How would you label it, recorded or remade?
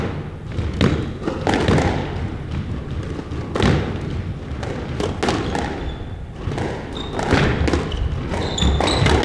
recorded